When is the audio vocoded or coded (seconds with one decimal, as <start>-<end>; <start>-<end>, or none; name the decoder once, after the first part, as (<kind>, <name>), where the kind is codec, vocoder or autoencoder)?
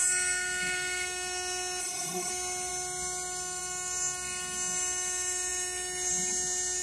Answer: 1.8-2.3 (codec, SNAC)